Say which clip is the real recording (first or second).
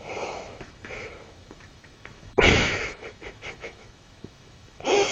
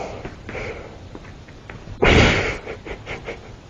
second